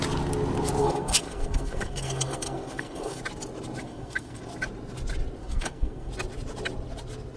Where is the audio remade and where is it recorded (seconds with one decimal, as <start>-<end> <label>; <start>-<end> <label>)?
0.0-0.8 recorded; 0.8-3.2 remade; 3.2-3.8 recorded; 3.8-4.4 remade; 4.4-5.4 recorded; 5.4-6.1 remade; 6.1-7.4 recorded